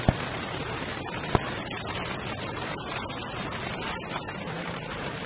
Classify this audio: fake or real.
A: fake